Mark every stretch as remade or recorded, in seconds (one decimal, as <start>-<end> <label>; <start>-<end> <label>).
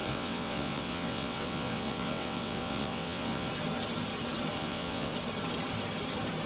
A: 0.0-3.5 remade; 3.5-4.6 recorded; 4.6-5.1 remade; 5.1-6.5 recorded